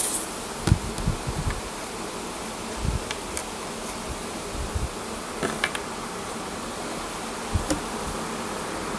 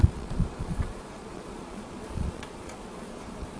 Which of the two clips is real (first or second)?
first